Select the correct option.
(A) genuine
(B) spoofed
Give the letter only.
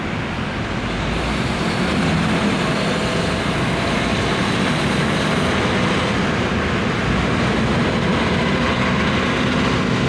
A